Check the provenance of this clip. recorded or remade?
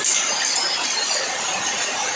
recorded